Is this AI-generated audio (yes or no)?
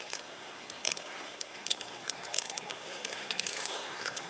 yes